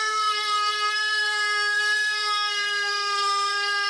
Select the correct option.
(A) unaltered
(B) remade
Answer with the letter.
B